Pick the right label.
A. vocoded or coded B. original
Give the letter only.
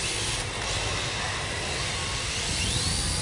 B